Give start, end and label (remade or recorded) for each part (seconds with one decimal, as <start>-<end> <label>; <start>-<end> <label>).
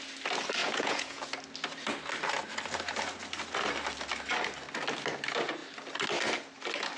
0.0-0.6 recorded; 0.6-1.2 remade; 1.2-7.0 recorded